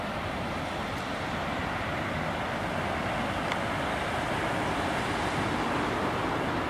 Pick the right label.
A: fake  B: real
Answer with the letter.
B